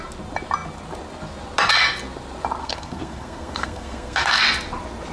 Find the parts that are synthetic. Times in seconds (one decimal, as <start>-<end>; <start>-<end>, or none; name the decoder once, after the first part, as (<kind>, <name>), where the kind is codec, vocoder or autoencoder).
2.6-4.4 (codec, SNAC)